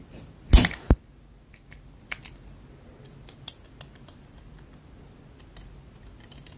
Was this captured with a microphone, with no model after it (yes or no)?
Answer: yes